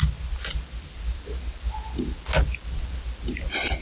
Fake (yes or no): no